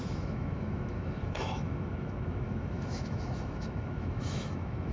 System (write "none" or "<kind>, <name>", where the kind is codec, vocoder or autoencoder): autoencoder, DAC-VAE